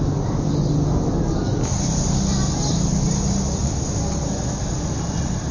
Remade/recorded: recorded